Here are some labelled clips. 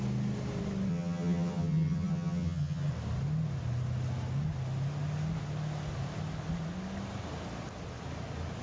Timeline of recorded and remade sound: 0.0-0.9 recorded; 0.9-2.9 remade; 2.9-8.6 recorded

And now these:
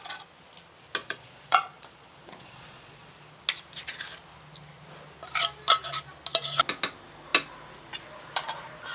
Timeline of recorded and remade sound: 0.0-1.0 recorded; 1.0-3.1 remade; 3.1-8.9 recorded

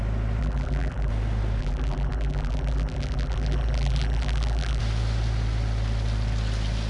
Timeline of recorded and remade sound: 0.0-0.4 recorded; 0.4-1.1 remade; 1.1-1.6 recorded; 1.6-4.8 remade; 4.8-6.9 recorded

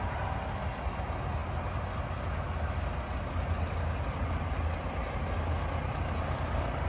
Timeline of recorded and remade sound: 0.0-6.9 recorded